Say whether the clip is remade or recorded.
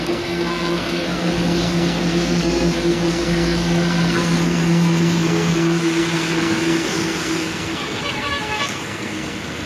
remade